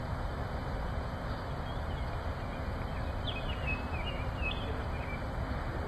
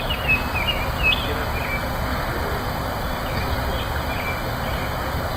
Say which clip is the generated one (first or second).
first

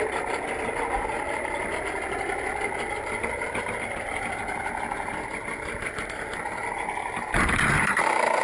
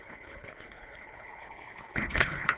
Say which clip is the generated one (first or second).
second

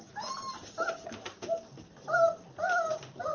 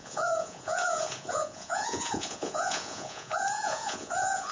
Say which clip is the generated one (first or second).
second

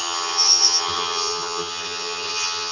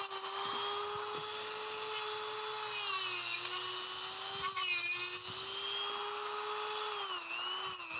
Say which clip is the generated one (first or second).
first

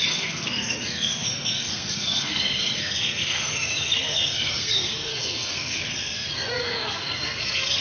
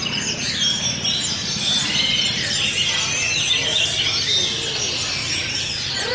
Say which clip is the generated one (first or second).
first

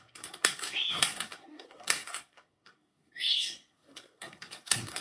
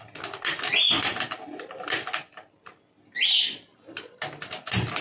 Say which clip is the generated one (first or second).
first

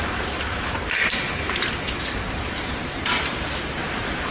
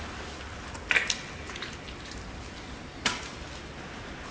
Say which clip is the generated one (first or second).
first